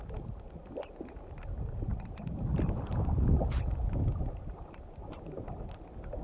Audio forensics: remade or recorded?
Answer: recorded